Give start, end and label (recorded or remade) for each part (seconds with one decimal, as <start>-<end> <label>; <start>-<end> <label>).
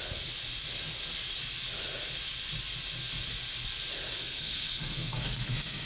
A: 0.0-4.2 recorded; 4.2-5.9 remade